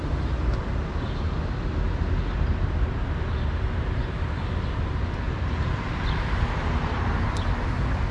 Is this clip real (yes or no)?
yes